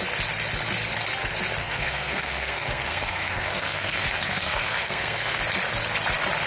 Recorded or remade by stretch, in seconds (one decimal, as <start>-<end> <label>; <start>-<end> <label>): 0.0-1.6 recorded; 1.6-5.4 remade; 5.4-6.5 recorded